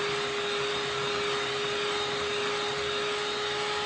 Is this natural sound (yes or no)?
yes